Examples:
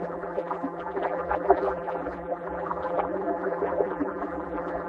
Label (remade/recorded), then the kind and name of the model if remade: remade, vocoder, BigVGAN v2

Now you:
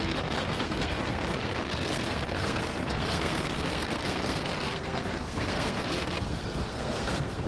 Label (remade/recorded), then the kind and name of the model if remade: remade, codec, SNAC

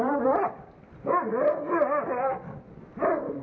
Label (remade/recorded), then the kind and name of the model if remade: remade, vocoder, BigVGAN v2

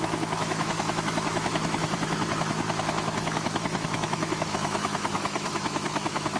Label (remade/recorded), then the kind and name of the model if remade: remade, autoencoder, DAC-VAE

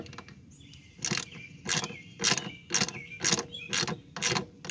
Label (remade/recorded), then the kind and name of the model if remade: recorded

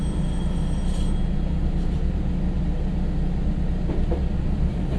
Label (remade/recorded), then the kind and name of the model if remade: recorded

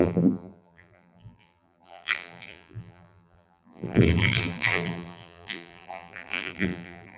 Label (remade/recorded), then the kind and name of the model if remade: remade, vocoder, BigVGAN v2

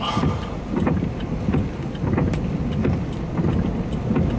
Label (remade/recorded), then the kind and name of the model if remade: recorded